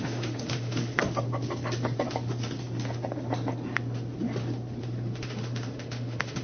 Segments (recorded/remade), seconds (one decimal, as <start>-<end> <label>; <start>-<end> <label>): 0.0-1.0 remade; 1.0-4.8 recorded; 4.8-6.4 remade